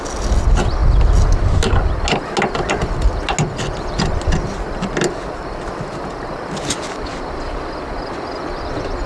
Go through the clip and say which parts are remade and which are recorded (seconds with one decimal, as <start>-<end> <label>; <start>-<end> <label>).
0.0-9.1 recorded